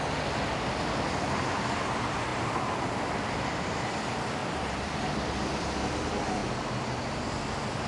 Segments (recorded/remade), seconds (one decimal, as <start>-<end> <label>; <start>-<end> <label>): 0.0-2.3 recorded; 2.3-3.1 remade; 3.1-4.4 recorded; 4.4-5.9 remade; 5.9-7.9 recorded